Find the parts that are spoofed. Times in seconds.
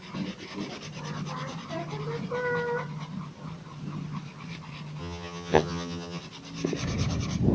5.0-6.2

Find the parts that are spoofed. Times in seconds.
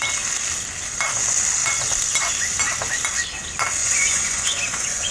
3.8-5.1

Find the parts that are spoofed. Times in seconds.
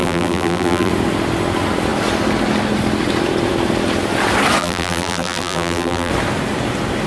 0.0-0.9; 4.6-6.1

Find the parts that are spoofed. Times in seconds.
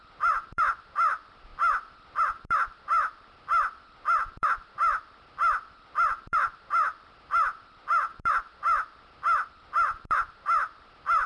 0.0-11.3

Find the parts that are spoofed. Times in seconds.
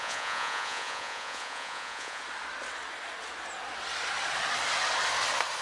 0.0-2.2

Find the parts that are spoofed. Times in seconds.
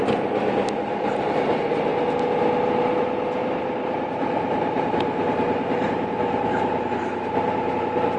0.9-1.8; 3.4-7.7